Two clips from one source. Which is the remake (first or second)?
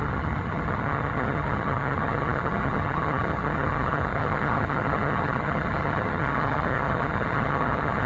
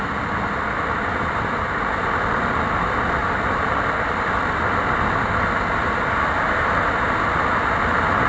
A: first